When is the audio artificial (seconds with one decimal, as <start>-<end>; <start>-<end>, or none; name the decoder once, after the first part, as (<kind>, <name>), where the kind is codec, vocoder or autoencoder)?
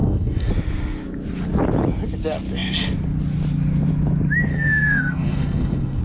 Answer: 0.0-0.5 (codec, SNAC); 4.5-6.0